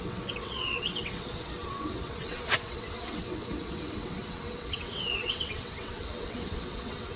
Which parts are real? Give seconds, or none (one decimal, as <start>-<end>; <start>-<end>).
none